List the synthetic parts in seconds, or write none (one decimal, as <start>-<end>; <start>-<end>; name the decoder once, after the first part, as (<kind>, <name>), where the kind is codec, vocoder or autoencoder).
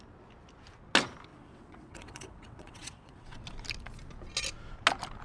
1.3-3.4 (vocoder, WaveNeXt)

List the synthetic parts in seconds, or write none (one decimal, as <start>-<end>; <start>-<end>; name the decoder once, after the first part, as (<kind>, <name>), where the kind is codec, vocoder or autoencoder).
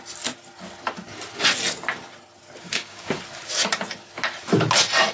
2.6-3.1 (codec, DAC)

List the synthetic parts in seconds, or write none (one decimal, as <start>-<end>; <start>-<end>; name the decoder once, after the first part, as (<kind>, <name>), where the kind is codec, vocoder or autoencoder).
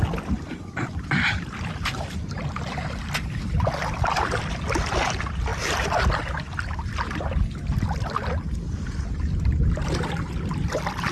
none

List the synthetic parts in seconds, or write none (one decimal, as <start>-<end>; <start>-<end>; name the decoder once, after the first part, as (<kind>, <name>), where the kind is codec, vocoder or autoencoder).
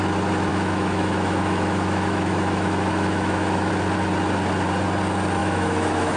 0.5-3.7 (autoencoder, DAC-VAE); 5.4-6.2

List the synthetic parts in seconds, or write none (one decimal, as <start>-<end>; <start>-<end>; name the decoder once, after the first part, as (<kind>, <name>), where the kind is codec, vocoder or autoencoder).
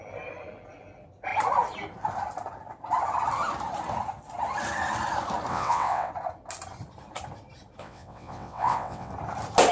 5.5-6.1 (vocoder, WaveNeXt); 7.8-9.1